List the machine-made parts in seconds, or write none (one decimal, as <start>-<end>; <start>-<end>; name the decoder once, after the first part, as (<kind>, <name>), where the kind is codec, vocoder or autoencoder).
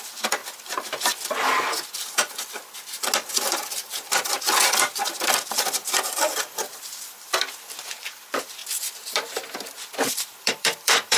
0.0-0.4 (vocoder, BigVGAN v2); 3.3-8.6; 10.1-11.2